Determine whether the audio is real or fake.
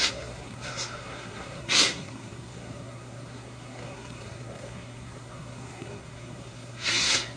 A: fake